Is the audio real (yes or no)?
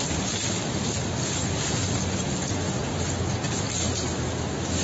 yes